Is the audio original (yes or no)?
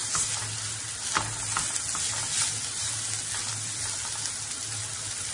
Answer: yes